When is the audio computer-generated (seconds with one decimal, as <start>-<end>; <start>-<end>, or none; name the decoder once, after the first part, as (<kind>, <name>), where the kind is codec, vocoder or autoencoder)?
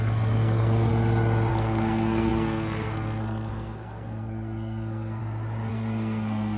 0.0-0.9 (codec, SNAC); 1.5-5.2; 5.7-6.6